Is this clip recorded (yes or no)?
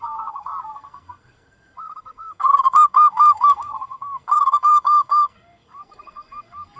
no